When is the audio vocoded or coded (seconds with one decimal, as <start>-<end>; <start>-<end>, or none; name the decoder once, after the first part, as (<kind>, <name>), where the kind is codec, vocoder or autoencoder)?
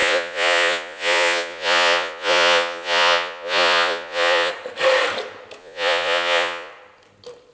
0.0-4.5 (vocoder, Vocos); 5.6-6.7